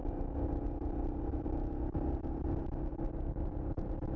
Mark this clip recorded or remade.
recorded